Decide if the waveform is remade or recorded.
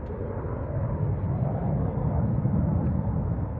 recorded